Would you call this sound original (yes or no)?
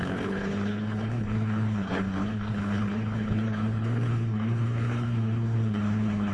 no